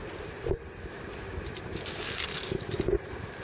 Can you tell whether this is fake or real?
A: real